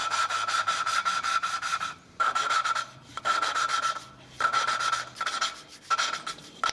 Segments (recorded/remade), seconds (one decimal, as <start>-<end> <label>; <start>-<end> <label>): 0.0-2.7 remade; 2.7-6.7 recorded